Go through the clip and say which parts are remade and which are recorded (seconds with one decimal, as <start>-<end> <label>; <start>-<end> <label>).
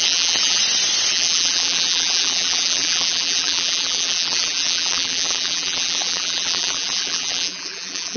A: 0.0-0.6 remade; 0.6-1.1 recorded; 1.1-8.2 remade